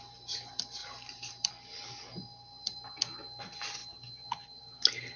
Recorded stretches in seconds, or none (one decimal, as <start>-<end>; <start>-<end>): 0.0-0.8; 1.5-5.2